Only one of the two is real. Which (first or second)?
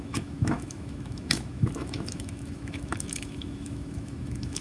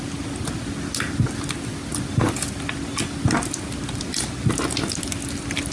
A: second